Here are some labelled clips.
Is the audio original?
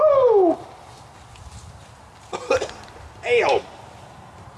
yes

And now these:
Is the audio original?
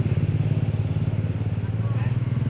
yes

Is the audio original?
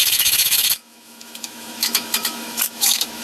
no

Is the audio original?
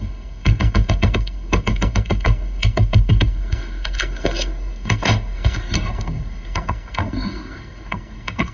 no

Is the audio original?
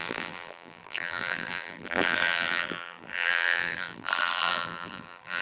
no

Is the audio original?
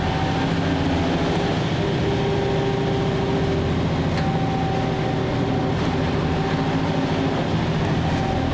yes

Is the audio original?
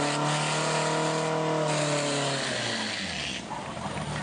yes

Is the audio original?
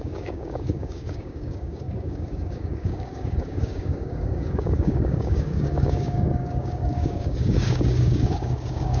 no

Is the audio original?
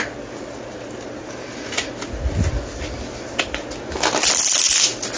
yes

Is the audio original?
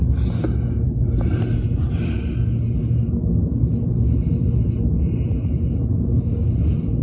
yes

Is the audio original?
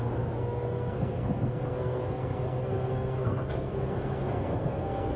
no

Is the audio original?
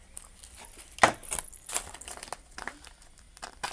yes